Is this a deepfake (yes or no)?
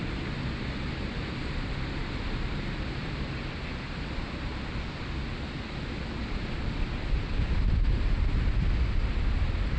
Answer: yes